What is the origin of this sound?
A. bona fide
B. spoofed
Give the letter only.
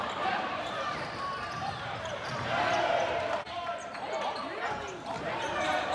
B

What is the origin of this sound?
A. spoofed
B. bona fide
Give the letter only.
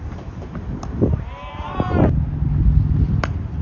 A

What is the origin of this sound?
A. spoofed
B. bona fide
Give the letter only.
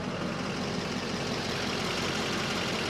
B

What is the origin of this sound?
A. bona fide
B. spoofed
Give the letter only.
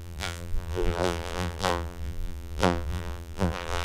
B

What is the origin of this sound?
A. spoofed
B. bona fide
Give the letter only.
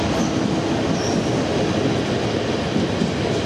B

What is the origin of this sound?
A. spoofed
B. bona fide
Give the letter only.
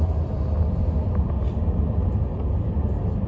B